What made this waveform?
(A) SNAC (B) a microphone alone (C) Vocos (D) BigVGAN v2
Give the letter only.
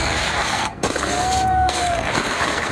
A